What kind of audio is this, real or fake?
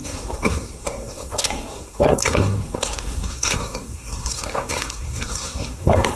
fake